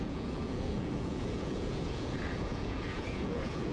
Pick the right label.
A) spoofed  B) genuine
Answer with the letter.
A